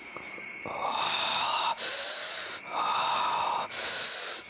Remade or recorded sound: recorded